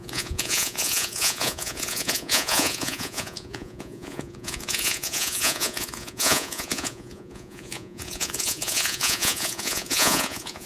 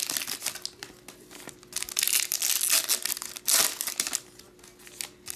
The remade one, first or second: first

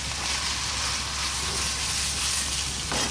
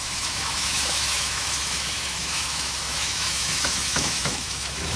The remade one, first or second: second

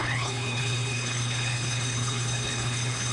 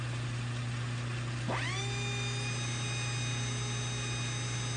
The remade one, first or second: first